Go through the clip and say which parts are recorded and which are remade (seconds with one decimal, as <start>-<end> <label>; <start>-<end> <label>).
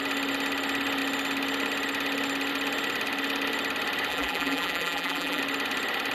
0.0-4.1 recorded; 4.1-5.4 remade; 5.4-6.1 recorded